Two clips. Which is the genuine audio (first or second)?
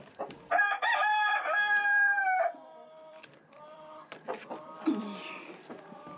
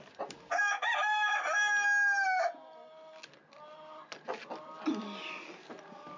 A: second